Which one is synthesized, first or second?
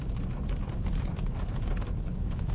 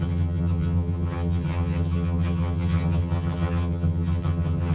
second